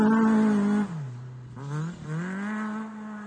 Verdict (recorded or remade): recorded